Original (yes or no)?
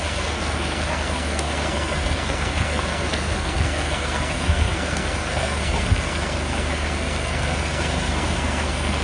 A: no